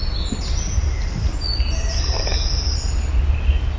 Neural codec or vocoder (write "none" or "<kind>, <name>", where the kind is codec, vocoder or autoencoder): none